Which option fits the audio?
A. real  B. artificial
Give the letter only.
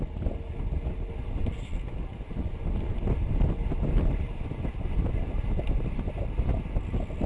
A